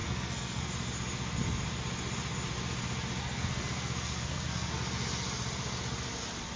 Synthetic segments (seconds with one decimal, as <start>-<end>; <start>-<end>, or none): 0.0-0.7; 3.2-4.7